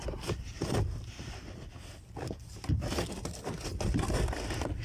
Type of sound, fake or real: fake